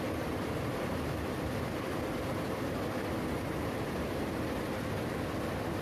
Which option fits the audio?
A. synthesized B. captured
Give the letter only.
A